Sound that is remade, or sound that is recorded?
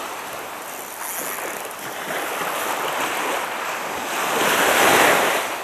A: recorded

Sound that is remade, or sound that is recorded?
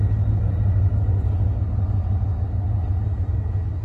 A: recorded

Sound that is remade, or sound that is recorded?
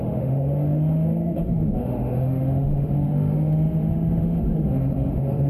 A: remade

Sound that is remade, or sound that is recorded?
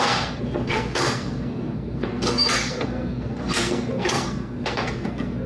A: remade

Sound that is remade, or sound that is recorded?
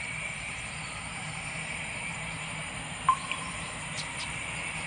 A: remade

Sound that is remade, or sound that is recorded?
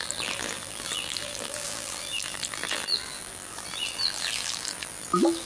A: remade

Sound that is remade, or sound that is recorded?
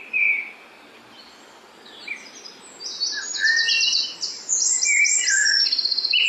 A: recorded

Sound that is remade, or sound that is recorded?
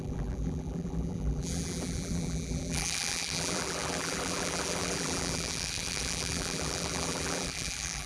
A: remade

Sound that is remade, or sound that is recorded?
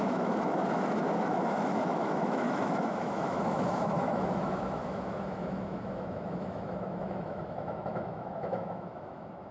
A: remade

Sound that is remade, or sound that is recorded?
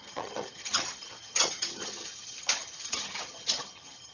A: remade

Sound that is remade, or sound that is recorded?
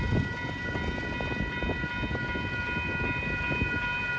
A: recorded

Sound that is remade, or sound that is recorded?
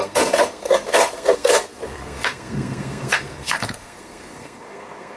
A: remade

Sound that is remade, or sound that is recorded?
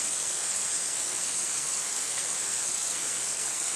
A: remade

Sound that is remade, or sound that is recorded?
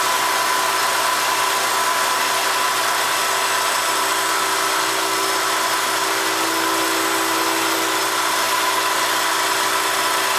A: recorded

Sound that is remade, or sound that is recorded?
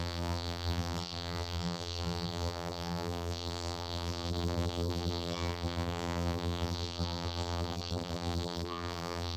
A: remade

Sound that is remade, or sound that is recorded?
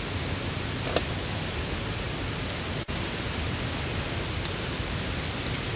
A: recorded